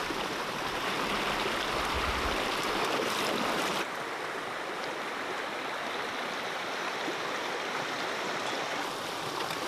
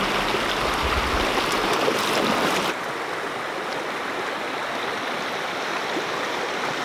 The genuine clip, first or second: second